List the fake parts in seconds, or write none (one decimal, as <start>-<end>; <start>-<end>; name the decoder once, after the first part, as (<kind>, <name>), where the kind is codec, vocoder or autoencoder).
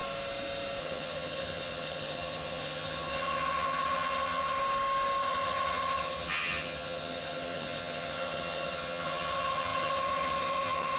0.8-4.6 (vocoder, HiFi-GAN); 5.2-11.0